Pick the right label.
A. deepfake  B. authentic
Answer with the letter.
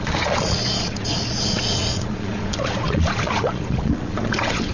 A